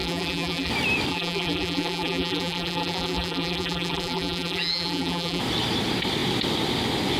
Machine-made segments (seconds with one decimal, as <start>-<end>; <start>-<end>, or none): 0.0-0.7; 1.1-5.4